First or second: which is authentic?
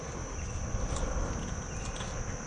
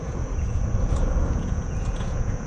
first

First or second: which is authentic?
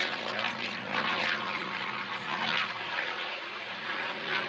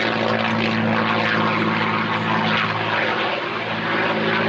second